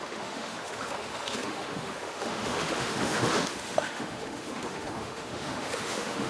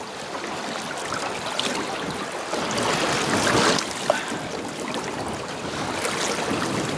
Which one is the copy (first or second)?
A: first